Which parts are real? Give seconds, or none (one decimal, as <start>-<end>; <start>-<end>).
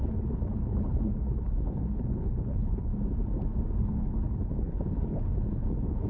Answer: 2.9-3.8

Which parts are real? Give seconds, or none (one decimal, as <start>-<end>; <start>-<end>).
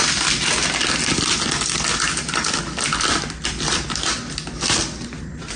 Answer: 0.0-5.6